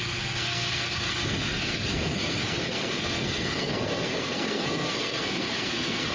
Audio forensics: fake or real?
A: fake